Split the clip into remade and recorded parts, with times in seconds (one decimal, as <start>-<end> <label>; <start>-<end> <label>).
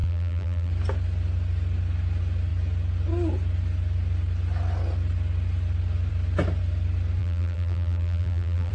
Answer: 0.0-0.7 remade; 0.7-7.2 recorded; 7.2-8.7 remade